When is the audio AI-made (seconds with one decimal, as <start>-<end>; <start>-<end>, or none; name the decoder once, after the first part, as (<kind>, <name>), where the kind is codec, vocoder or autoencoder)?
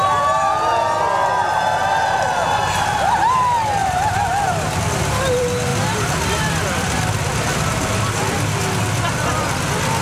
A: 3.8-4.8 (vocoder, BigVGAN v2)